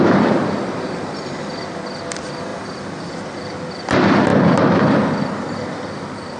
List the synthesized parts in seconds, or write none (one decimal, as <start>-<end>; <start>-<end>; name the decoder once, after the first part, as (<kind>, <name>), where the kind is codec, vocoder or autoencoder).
0.0-4.3 (vocoder, BigVGAN v2)